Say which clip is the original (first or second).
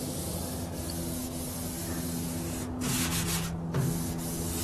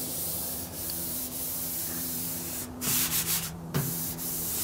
first